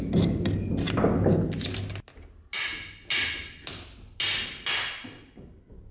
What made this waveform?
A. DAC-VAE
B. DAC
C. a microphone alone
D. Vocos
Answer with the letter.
C